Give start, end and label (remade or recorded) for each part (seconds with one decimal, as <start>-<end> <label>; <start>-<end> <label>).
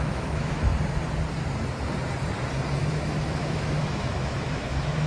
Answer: 0.0-0.7 remade; 0.7-2.9 recorded; 2.9-5.1 remade